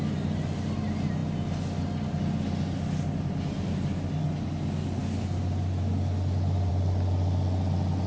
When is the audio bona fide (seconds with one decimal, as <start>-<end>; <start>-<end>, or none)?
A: 0.0-8.1